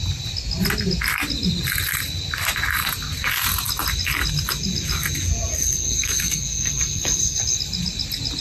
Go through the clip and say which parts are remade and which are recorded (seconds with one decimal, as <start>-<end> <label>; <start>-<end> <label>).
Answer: 0.0-5.5 recorded; 5.5-7.4 remade; 7.4-8.4 recorded